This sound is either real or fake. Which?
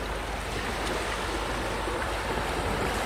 real